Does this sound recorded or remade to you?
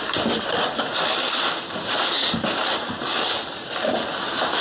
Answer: recorded